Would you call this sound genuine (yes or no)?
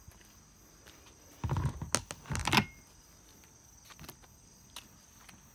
yes